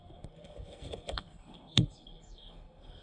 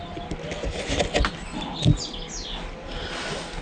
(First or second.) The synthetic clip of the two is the first